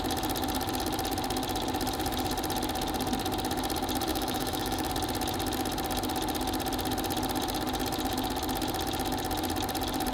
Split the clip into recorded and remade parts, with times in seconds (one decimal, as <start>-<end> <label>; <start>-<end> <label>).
0.0-4.1 recorded; 4.1-4.9 remade; 4.9-10.1 recorded